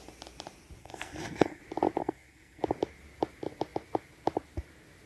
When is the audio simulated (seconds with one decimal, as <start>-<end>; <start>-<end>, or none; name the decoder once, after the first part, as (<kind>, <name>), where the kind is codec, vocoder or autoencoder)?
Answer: 0.8-1.6 (codec, SNAC); 2.0-2.6